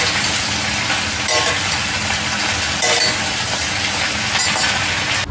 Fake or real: real